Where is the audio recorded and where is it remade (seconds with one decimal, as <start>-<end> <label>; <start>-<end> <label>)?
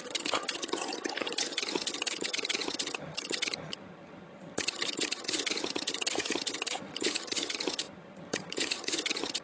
0.0-9.4 remade